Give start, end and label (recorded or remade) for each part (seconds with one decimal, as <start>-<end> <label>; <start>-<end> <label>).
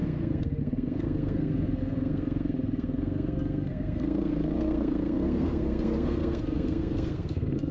0.0-7.7 remade